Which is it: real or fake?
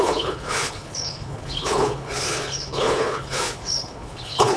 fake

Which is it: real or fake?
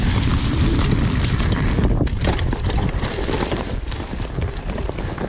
real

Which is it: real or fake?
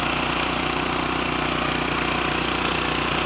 real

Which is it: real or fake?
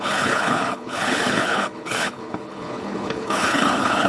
fake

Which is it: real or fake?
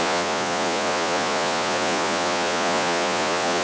fake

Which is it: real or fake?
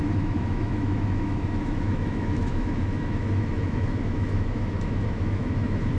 fake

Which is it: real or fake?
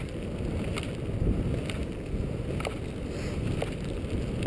real